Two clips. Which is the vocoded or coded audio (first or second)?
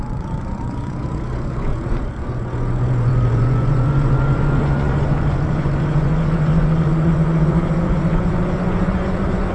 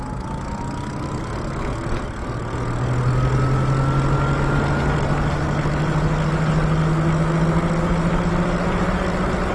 first